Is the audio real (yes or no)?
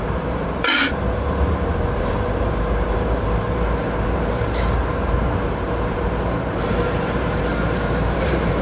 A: no